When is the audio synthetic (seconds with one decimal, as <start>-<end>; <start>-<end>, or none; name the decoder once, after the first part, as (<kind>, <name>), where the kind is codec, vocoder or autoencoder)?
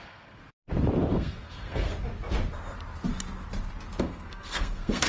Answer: 0.0-0.4 (codec, SNAC); 1.1-1.9; 4.0-5.1